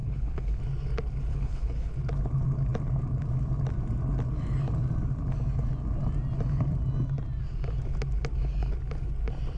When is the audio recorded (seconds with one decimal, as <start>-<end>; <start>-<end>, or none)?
0.6-1.3; 1.9-9.6